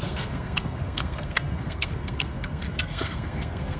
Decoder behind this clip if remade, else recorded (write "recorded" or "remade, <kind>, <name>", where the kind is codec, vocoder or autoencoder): remade, codec, SNAC